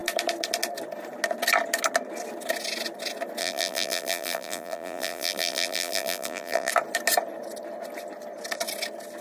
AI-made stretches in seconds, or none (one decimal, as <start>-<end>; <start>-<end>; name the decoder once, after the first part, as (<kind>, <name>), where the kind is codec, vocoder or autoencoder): 3.4-6.7 (vocoder, BigVGAN v2)